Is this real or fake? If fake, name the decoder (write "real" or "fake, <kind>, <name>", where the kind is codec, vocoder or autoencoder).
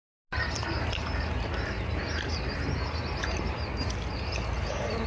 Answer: real